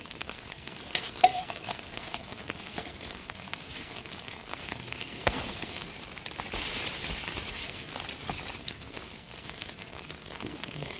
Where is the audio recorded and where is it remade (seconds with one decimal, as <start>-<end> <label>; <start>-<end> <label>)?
0.0-5.9 remade; 5.9-7.5 recorded; 7.5-7.9 remade; 7.9-8.6 recorded; 8.6-11.0 remade